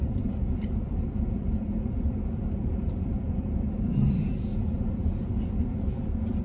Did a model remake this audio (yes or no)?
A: yes